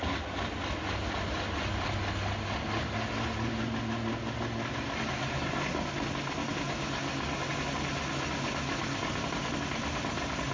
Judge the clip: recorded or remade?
recorded